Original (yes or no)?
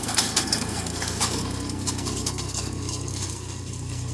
no